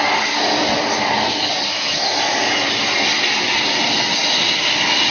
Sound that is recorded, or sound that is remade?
recorded